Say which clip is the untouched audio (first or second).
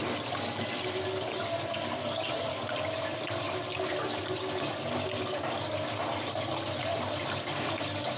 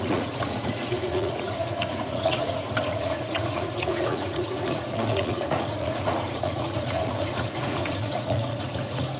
first